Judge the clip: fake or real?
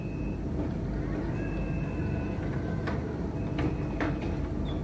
real